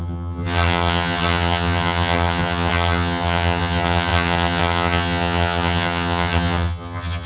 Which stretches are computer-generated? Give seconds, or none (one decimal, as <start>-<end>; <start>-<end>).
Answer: 0.0-7.3